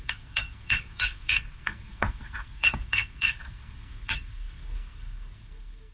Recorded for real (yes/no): no